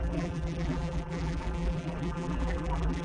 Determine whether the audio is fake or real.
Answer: fake